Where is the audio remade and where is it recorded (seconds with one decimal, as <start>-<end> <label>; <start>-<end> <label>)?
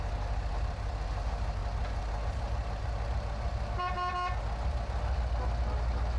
0.0-6.2 recorded